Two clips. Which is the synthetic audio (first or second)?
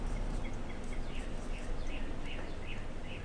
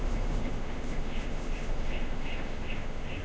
second